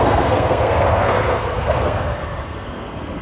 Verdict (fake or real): fake